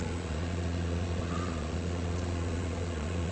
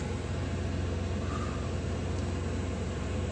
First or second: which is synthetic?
first